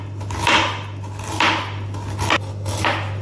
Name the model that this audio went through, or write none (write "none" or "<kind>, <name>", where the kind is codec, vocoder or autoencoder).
none